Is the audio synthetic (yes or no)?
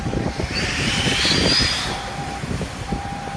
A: yes